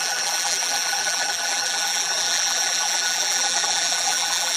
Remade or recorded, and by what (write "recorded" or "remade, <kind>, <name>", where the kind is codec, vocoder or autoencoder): remade, vocoder, BigVGAN v2